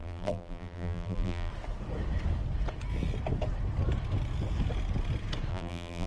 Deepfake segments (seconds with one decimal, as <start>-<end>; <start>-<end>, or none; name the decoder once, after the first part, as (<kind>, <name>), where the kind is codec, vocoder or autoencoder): 0.0-1.5 (vocoder, BigVGAN v2); 5.5-6.1